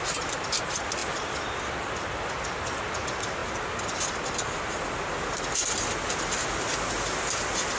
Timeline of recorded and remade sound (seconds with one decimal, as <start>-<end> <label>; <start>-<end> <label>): 0.0-7.8 recorded